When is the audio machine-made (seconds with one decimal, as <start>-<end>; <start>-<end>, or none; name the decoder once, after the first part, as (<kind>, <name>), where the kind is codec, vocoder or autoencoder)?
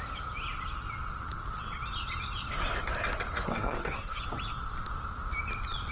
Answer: 3.5-4.2 (codec, SNAC)